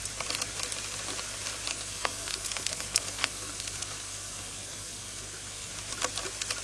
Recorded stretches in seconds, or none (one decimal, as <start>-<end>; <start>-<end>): 0.0-1.7; 5.7-6.6